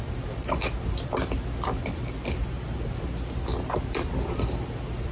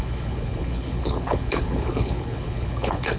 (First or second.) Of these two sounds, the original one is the first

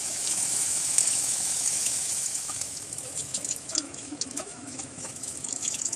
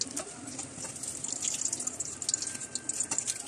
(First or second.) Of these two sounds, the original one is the second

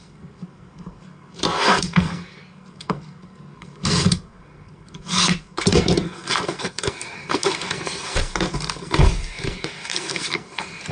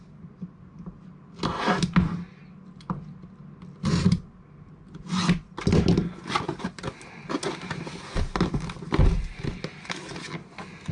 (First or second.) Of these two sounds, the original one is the second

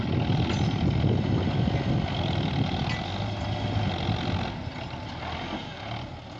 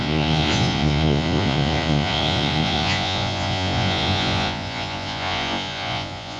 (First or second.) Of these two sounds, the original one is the first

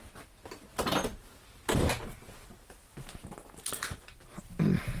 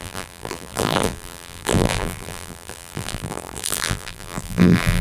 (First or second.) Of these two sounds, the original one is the first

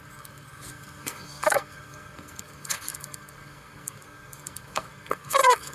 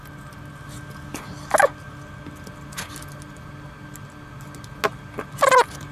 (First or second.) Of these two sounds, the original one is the second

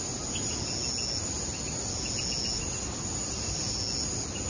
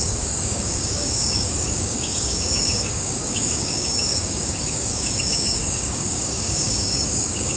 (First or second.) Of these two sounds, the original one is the first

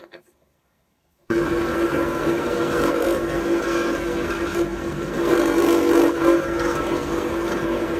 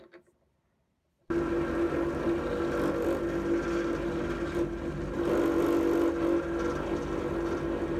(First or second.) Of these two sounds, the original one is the second